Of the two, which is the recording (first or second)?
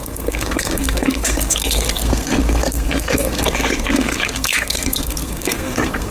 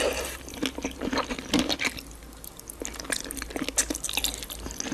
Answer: second